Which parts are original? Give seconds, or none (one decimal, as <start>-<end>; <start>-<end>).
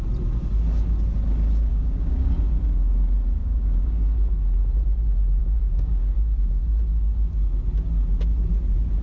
0.0-1.7; 2.3-3.4; 4.0-5.4; 6.6-9.0